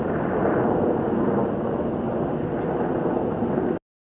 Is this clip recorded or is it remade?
recorded